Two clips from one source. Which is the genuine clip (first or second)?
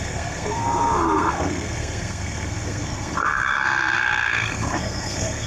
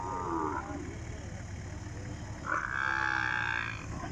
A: second